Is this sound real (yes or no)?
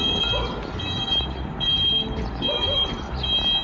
yes